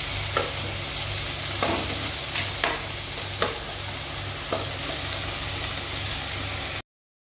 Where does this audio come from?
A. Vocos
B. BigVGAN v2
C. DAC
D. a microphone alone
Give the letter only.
D